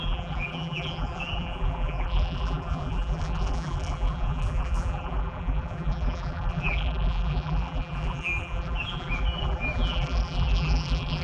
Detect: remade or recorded remade